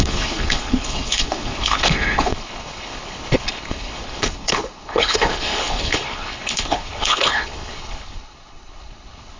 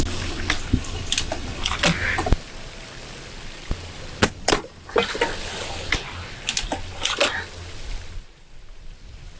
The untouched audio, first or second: second